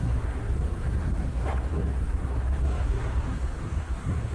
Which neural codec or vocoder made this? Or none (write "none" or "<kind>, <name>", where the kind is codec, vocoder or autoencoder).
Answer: codec, SNAC